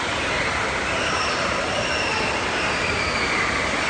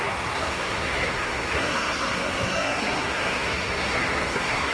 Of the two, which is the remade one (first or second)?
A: second